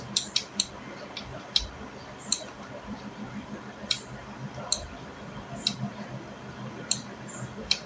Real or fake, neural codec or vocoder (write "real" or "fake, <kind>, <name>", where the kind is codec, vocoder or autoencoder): real